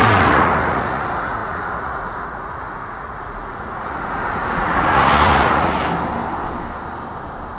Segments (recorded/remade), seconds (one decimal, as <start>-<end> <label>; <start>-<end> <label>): 0.0-5.8 remade; 5.8-7.6 recorded